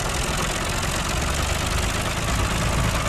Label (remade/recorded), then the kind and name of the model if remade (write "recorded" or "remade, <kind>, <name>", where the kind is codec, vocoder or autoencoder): recorded